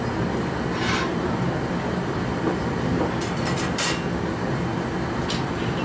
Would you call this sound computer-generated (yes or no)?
no